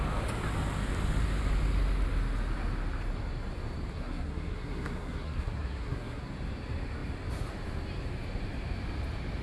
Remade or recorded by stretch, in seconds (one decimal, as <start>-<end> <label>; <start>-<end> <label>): 0.0-3.9 recorded; 3.9-6.2 remade; 6.2-9.4 recorded